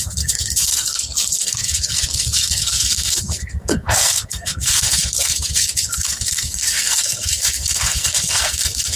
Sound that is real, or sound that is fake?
fake